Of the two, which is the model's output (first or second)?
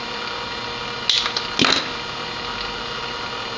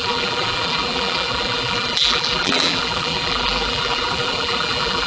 second